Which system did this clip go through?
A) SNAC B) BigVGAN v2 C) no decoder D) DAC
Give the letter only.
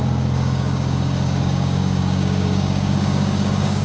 D